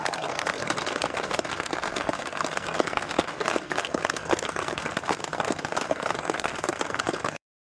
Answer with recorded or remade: remade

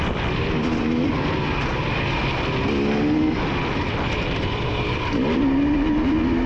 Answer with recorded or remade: recorded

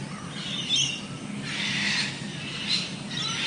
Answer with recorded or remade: recorded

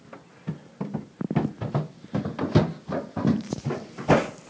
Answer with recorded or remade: recorded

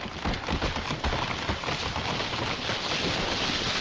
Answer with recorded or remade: recorded